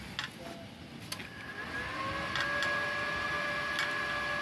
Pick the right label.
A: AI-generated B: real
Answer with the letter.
B